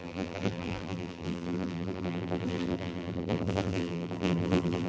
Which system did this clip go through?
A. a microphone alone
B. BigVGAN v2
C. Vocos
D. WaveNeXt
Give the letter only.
B